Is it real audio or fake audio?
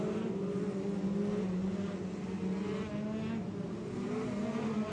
real